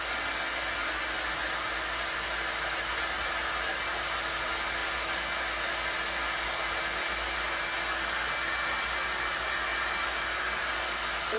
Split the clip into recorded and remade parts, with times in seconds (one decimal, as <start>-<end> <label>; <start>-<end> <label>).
0.0-11.4 recorded